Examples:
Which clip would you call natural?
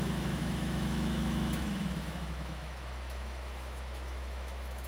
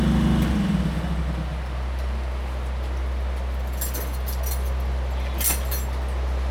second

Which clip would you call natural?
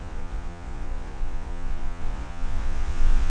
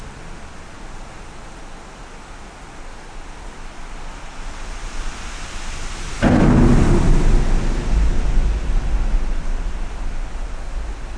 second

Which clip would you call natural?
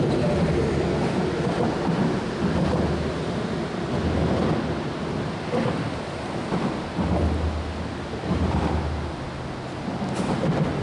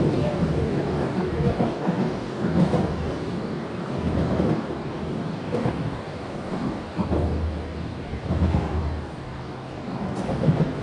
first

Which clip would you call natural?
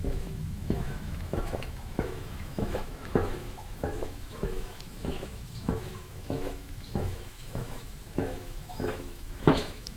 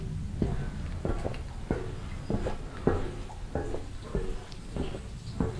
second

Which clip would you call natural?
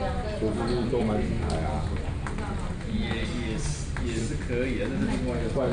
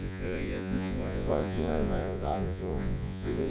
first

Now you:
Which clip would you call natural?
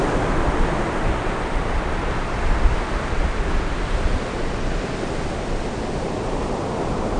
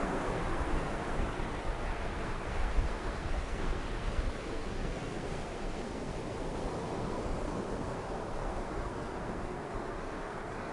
first